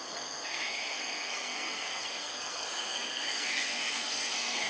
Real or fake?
fake